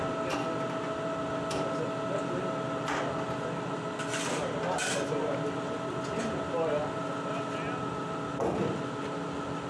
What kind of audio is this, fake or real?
real